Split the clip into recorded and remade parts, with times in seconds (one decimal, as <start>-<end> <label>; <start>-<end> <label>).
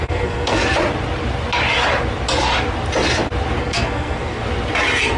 0.0-0.6 remade; 0.6-3.6 recorded; 3.6-4.4 remade; 4.4-5.2 recorded